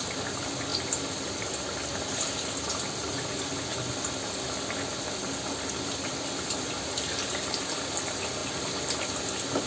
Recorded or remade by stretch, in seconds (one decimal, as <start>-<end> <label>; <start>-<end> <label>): 0.0-9.7 recorded

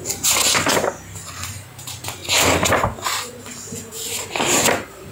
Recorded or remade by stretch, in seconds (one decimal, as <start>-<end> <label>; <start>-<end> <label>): 0.0-5.1 recorded